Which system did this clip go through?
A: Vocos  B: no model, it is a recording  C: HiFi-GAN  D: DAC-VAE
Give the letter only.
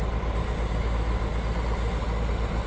B